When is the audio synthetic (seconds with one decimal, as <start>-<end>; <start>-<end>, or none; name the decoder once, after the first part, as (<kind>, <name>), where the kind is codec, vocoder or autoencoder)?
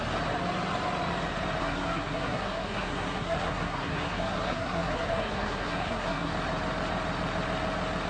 1.6-6.3 (codec, SNAC)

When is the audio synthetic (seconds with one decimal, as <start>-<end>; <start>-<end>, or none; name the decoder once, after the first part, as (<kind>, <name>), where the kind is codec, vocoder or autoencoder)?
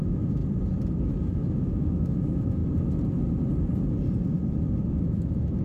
0.0-0.4 (autoencoder, DAC-VAE); 1.2-2.6; 4.9-5.6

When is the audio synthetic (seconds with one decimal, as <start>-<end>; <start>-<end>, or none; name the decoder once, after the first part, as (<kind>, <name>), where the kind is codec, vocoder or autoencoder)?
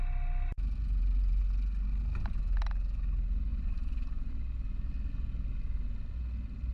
0.5-1.4 (vocoder, BigVGAN v2); 3.5-4.3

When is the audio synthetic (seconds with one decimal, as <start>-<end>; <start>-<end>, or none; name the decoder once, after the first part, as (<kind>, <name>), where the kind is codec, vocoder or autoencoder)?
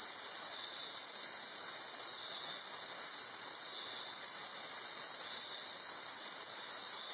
none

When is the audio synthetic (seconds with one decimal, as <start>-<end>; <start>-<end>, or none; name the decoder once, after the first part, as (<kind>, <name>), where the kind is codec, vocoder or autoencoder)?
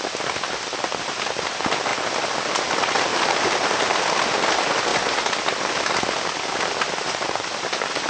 3.1-4.2 (vocoder, BigVGAN v2)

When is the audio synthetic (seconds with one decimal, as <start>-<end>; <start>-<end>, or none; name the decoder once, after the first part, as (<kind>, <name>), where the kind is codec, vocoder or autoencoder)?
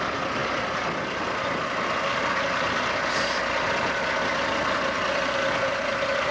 none